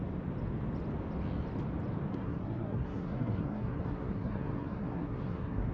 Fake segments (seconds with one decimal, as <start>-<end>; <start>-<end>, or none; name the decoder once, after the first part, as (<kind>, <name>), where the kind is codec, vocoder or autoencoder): 2.1-5.7 (codec, SNAC)